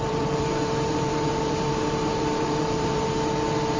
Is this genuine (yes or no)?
no